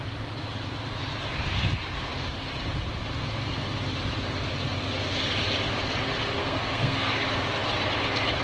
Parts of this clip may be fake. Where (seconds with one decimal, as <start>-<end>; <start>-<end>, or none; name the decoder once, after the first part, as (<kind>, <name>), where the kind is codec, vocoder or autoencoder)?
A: 6.4-7.1 (codec, SNAC)